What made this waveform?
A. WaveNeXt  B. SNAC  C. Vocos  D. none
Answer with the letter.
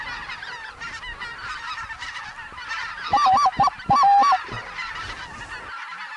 D